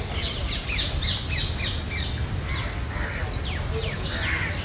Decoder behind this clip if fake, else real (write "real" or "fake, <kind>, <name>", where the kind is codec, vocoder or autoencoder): real